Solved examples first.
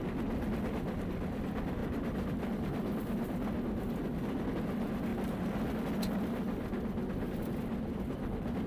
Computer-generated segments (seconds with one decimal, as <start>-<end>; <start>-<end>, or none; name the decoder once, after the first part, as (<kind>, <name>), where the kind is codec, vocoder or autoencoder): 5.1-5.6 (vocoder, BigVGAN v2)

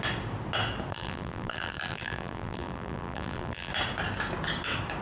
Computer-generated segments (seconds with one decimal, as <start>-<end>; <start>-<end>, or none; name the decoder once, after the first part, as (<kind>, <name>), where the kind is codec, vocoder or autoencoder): 0.9-3.7 (vocoder, BigVGAN v2)

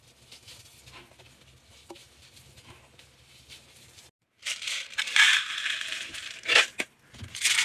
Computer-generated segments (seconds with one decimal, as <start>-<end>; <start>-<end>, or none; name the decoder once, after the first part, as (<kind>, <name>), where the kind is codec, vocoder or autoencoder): 2.0-6.6 (vocoder, BigVGAN v2)